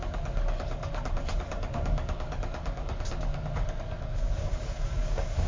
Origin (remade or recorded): remade